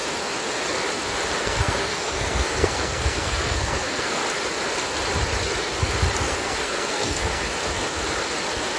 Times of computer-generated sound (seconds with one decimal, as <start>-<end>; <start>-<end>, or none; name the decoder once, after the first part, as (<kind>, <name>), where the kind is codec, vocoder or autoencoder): 1.4-4.2 (codec, SNAC); 6.2-7.4